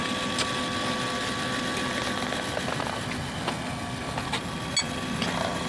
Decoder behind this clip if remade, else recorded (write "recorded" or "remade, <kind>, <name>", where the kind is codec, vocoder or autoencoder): recorded